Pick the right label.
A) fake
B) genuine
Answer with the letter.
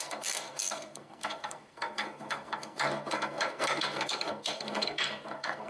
A